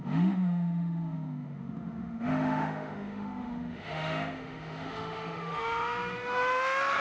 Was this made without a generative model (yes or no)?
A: no